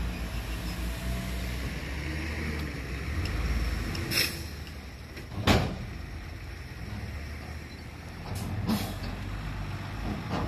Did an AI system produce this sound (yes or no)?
no